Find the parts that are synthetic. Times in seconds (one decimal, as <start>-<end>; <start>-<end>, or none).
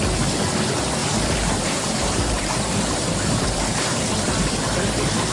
1.0-4.0